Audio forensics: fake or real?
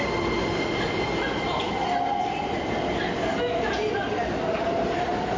real